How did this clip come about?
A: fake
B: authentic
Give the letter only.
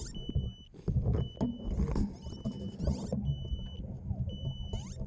B